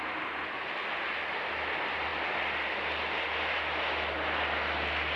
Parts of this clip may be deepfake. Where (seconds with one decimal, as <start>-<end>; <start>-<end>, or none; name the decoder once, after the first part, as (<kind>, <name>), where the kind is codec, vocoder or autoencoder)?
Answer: none